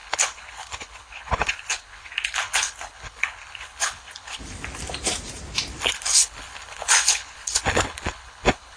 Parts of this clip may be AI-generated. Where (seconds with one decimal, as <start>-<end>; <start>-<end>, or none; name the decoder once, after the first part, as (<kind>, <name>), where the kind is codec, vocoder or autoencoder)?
0.0-4.4 (codec, HILCodec); 5.8-8.8